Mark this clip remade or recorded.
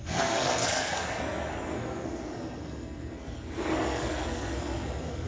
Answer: remade